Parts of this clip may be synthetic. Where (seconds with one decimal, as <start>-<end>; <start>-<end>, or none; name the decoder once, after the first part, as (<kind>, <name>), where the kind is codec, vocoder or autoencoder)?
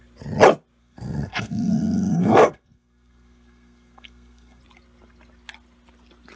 0.8-4.6 (codec, SNAC)